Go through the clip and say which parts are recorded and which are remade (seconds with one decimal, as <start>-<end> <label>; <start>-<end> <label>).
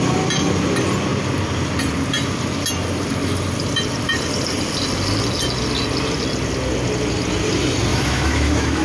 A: 0.0-7.9 recorded; 7.9-8.8 remade